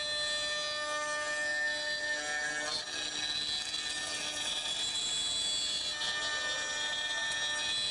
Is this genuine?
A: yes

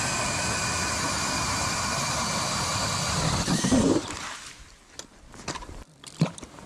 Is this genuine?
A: no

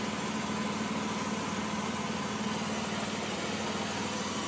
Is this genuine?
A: yes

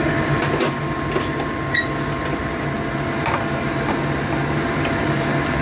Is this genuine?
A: yes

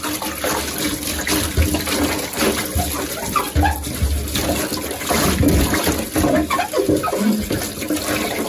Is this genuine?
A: yes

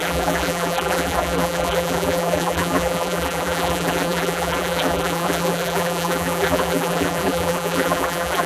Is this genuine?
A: no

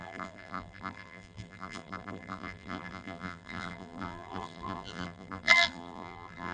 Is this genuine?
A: no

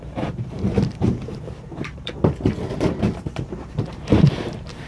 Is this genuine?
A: no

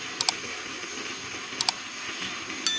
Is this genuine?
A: yes